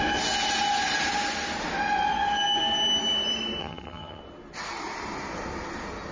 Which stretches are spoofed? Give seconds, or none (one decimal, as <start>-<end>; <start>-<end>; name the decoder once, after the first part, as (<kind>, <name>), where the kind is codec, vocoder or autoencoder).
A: 3.6-4.2 (vocoder, HiFi-GAN)

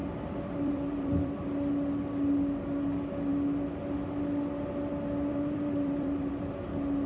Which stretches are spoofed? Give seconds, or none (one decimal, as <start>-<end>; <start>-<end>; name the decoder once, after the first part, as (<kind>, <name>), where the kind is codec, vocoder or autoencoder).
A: 0.0-1.3 (vocoder, BigVGAN v2); 5.3-6.3

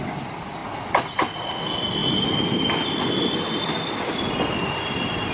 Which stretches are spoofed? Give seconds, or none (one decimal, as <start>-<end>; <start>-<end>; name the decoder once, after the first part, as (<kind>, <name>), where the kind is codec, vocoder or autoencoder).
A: none

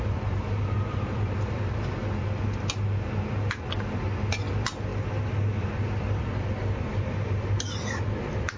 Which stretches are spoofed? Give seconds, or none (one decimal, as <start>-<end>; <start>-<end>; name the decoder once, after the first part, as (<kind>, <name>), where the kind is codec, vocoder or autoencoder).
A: 0.0-2.0 (vocoder, BigVGAN v2); 4.5-4.9; 5.6-8.6

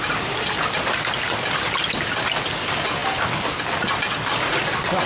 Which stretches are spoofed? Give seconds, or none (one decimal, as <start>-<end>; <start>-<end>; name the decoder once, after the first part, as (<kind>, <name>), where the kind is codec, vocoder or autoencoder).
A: none

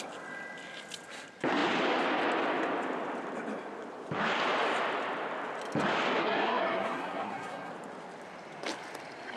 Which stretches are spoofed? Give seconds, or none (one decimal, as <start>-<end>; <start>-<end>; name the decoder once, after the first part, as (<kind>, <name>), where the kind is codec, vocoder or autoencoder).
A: 6.2-7.7 (codec, SNAC)

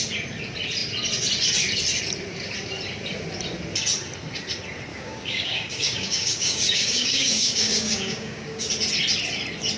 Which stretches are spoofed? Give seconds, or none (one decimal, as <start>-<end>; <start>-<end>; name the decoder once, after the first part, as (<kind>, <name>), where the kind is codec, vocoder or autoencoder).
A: 4.9-8.7 (codec, DAC)